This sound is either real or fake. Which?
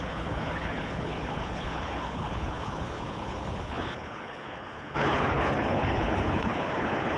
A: fake